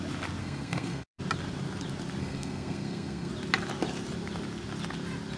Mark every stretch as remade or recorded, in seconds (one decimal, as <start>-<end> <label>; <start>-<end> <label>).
0.0-0.4 recorded; 0.4-1.2 remade; 1.2-2.2 recorded; 2.2-3.3 remade; 3.3-5.4 recorded